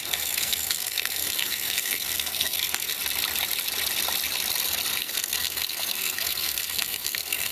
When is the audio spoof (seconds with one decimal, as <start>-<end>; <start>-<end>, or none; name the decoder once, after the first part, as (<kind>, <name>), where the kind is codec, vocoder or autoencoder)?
0.0-2.9 (codec, SNAC); 5.0-7.5